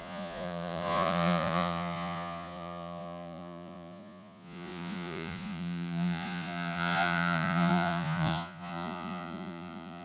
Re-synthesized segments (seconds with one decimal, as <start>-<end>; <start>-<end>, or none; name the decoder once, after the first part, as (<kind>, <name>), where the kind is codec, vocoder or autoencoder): 0.0-10.0 (vocoder, Vocos)